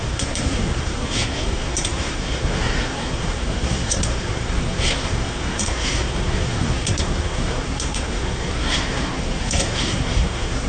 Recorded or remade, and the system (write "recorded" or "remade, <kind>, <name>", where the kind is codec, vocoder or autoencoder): remade, codec, SNAC